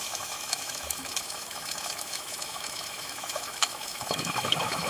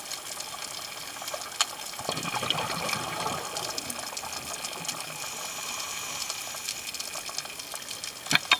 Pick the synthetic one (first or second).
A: first